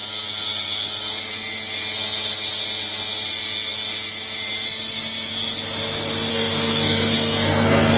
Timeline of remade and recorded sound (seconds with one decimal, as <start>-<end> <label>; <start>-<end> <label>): 0.0-6.3 recorded; 6.3-8.0 remade